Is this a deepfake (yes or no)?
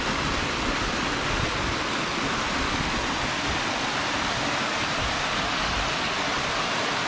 no